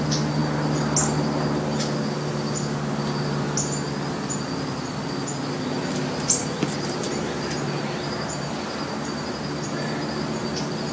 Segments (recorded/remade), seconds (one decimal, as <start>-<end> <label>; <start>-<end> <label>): 0.0-10.9 recorded